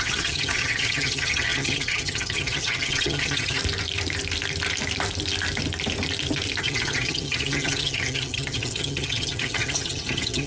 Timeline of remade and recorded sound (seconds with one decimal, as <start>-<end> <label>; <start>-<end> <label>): 0.0-3.6 remade; 3.6-6.6 recorded; 6.6-10.5 remade